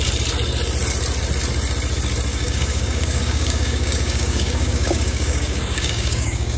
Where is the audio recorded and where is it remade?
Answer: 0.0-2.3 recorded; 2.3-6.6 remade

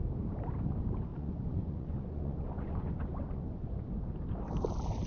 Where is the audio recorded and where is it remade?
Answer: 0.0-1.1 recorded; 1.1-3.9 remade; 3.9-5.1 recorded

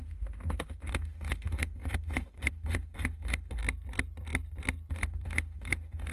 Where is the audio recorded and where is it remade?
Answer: 0.0-3.6 remade; 3.6-4.9 recorded; 4.9-6.1 remade

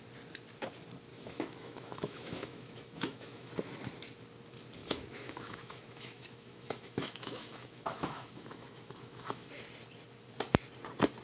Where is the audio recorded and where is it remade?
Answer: 0.0-1.1 recorded; 1.1-3.5 remade; 3.5-4.8 recorded; 4.8-9.5 remade; 9.5-11.2 recorded